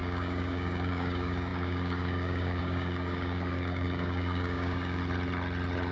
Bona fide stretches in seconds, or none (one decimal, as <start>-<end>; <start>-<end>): 5.0-5.9